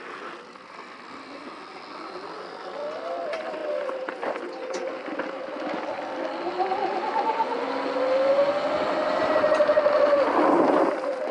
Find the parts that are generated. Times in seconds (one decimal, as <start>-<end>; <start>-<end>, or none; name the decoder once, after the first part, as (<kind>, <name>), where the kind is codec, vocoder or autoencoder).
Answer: none